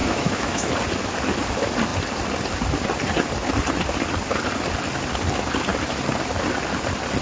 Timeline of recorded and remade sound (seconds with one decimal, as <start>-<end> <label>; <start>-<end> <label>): 0.0-0.7 remade; 0.7-7.2 recorded